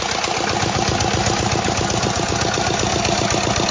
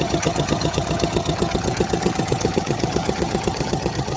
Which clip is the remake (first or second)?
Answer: second